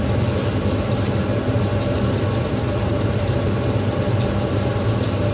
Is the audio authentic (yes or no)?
no